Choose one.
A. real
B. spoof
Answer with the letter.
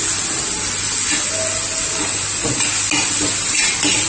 A